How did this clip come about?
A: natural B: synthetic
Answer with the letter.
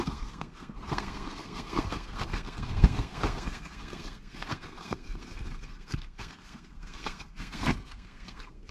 B